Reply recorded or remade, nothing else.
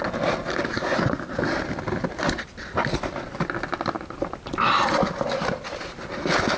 recorded